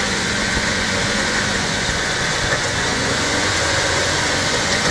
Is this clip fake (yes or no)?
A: yes